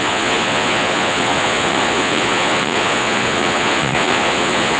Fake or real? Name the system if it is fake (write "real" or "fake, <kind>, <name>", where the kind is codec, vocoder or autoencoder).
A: fake, vocoder, Vocos